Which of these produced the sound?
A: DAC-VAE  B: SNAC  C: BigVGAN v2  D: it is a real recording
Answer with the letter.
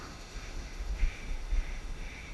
A